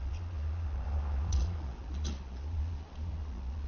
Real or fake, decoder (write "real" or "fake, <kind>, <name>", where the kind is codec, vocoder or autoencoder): fake, vocoder, Vocos